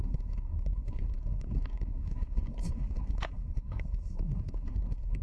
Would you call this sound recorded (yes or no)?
no